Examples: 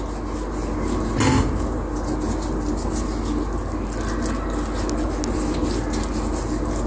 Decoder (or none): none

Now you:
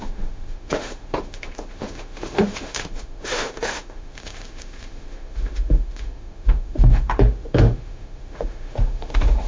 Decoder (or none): autoencoder, DAC-VAE